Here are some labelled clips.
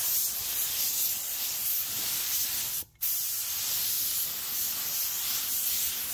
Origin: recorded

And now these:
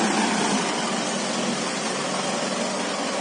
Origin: recorded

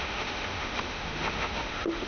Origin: remade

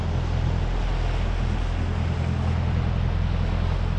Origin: recorded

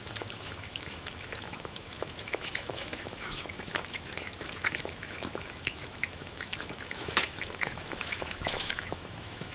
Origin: remade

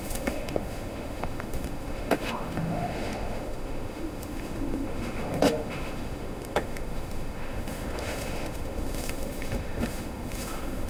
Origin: remade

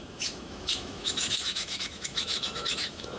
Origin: remade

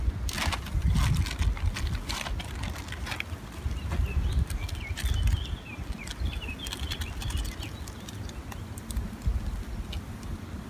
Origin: recorded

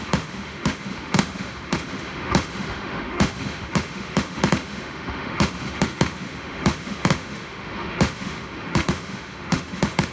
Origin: remade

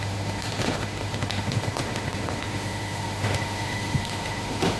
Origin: remade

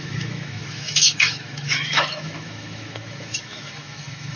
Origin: remade